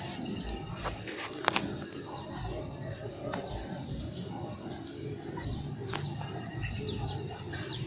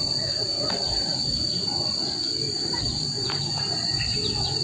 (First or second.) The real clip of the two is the first